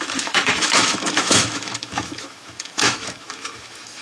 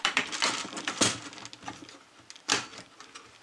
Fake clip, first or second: first